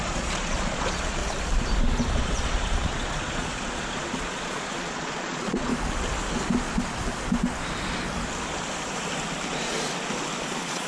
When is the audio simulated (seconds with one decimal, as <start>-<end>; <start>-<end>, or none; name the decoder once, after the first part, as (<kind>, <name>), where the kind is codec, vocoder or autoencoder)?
0.0-1.2 (vocoder, Vocos); 2.1-5.7; 10.4-10.9